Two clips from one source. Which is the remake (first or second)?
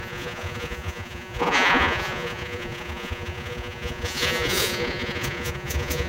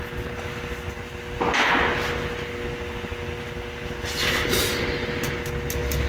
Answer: first